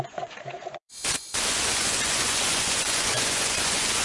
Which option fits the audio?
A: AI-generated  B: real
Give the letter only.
A